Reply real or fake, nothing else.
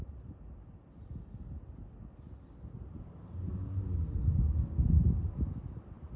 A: real